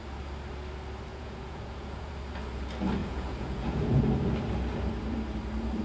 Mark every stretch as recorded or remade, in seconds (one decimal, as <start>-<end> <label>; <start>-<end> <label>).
0.0-1.1 recorded; 1.1-2.1 remade; 2.1-3.0 recorded; 3.0-4.0 remade; 4.0-5.8 recorded